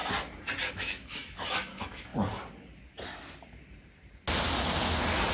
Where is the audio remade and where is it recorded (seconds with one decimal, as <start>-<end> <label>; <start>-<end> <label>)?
0.0-0.7 recorded; 0.7-2.1 remade; 2.1-5.3 recorded